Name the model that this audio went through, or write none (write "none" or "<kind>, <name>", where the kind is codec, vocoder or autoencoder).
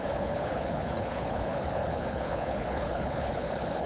codec, HILCodec